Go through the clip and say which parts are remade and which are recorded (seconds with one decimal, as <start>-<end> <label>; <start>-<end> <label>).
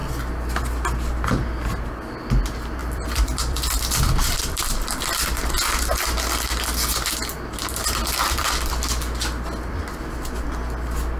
0.0-2.8 recorded; 2.8-4.8 remade; 4.8-7.8 recorded; 7.8-8.7 remade; 8.7-11.2 recorded